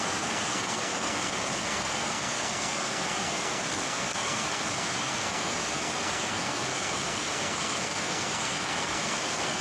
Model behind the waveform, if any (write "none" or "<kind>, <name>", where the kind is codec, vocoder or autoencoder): codec, SNAC